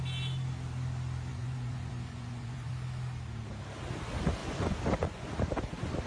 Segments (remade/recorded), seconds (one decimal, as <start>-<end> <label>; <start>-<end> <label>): 0.0-1.3 recorded; 1.3-2.7 remade; 2.7-4.4 recorded; 4.4-5.3 remade; 5.3-6.1 recorded